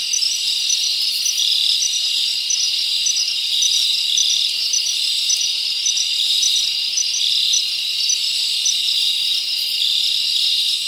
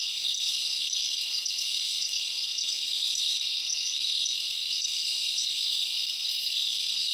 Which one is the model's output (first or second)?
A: second